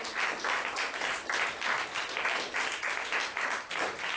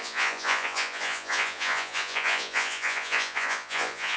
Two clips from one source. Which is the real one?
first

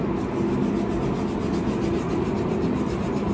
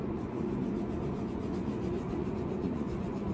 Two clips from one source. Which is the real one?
first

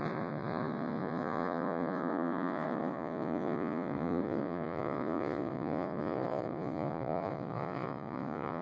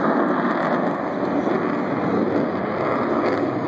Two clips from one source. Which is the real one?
second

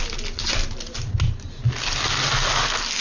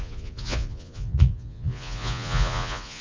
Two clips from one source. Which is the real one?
first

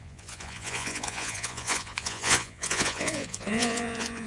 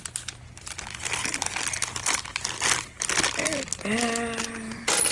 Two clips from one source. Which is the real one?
second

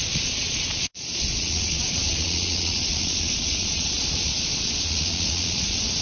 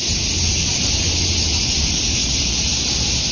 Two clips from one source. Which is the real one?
second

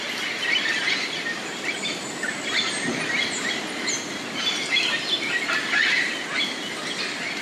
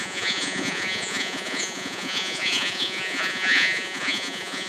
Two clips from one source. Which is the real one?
first